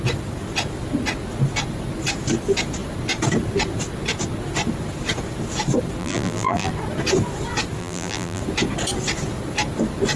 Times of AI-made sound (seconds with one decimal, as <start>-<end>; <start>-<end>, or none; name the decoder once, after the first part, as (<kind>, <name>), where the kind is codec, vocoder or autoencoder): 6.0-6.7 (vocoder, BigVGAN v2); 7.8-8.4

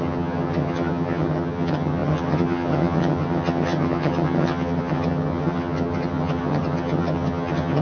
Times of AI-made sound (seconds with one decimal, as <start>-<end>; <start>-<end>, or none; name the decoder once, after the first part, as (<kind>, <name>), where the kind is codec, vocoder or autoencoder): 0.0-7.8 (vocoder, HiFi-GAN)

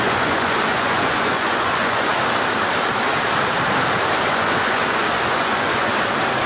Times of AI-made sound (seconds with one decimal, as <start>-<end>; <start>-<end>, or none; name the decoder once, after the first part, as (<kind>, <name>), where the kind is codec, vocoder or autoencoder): 0.0-2.1 (vocoder, Vocos); 4.3-5.9